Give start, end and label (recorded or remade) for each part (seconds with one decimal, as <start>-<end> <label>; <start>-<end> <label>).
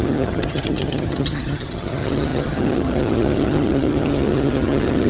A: 0.0-5.1 remade